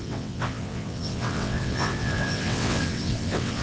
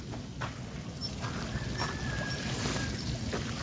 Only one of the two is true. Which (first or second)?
second